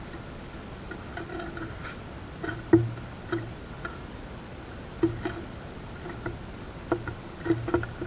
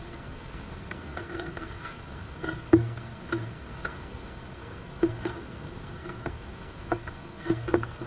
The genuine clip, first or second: first